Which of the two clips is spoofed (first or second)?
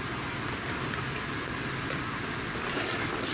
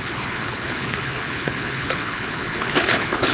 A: second